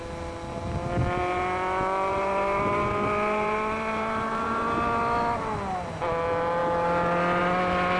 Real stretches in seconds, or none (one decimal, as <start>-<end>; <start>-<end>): 0.0-2.1; 4.6-8.0